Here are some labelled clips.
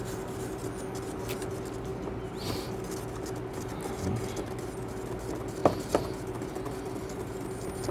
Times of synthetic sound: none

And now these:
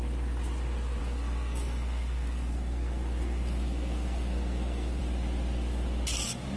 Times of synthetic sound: 1.0-5.0 (codec, SNAC)

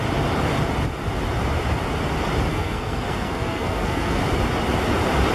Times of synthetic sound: 2.5-4.2 (codec, SNAC)

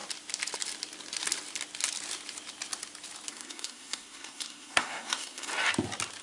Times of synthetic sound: 3.3-5.5 (codec, SNAC)

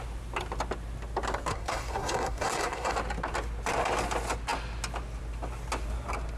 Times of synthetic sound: 1.5-2.9 (codec, SNAC)

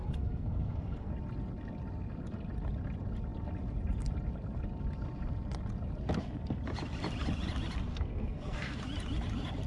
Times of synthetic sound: 0.0-1.1 (codec, SNAC); 7.9-8.8